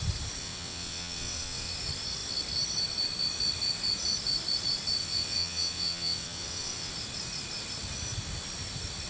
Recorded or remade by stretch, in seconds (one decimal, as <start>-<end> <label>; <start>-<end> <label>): 0.0-0.4 recorded; 0.4-1.7 remade; 1.7-5.0 recorded; 5.0-6.9 remade; 6.9-9.1 recorded